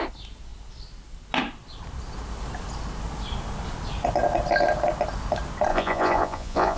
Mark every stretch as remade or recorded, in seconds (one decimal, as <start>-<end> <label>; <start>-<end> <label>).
0.0-5.7 recorded; 5.7-6.8 remade